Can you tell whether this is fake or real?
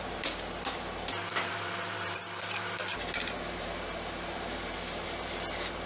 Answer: fake